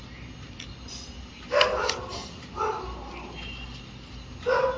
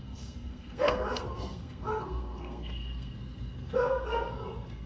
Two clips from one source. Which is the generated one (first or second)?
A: second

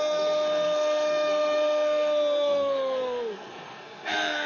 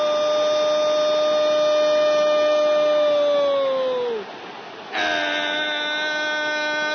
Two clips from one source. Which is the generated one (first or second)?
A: first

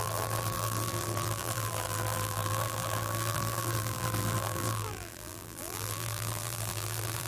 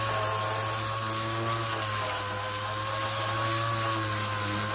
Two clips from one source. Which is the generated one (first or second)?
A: first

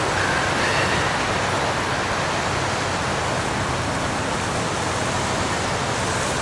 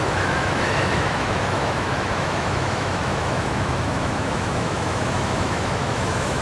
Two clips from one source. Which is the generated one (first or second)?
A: second